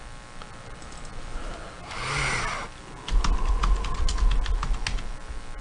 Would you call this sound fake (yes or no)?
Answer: no